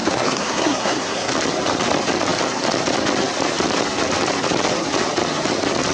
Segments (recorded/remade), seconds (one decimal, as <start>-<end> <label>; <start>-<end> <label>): 0.0-1.3 remade; 1.3-5.9 recorded